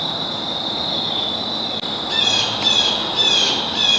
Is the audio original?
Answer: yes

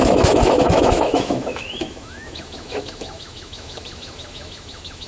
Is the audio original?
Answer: no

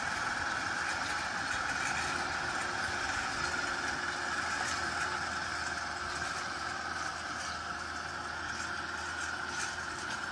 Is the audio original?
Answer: yes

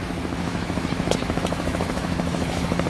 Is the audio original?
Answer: no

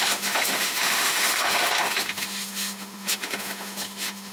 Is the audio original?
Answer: no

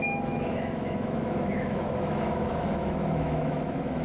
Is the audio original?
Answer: no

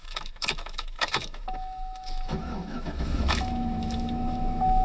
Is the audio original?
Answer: no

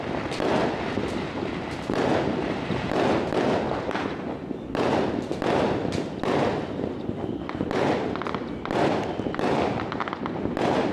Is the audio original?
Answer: yes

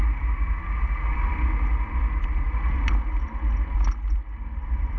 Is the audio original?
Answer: yes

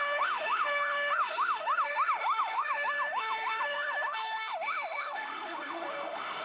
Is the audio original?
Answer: no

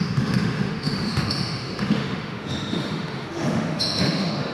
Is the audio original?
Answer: no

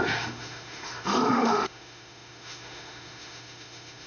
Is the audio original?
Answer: no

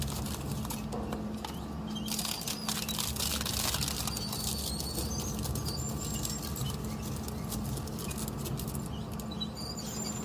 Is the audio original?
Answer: yes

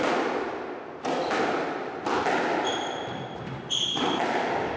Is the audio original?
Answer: yes